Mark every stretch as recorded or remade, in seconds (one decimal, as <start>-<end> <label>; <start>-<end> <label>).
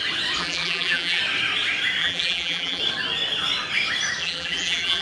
0.0-0.4 recorded; 0.4-1.2 remade; 1.2-2.0 recorded; 2.0-2.8 remade; 2.8-4.2 recorded; 4.2-5.0 remade